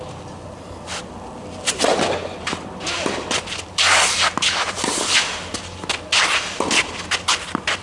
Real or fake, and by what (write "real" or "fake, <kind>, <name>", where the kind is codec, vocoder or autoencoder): real